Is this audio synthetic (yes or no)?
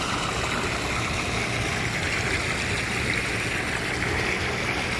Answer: no